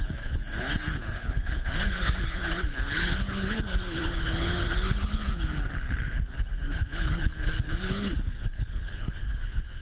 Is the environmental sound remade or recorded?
remade